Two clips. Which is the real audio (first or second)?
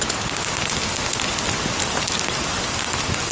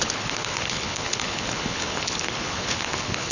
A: first